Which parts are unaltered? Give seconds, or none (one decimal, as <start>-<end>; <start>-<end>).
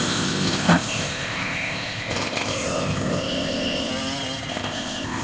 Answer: 3.9-4.5